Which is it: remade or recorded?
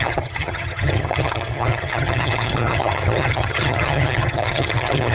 remade